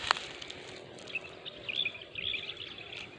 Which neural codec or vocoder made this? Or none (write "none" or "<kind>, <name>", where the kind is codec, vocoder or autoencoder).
none